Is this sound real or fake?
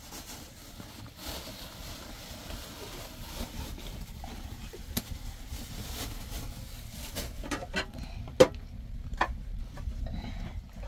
real